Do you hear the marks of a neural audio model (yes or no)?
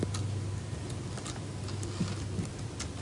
no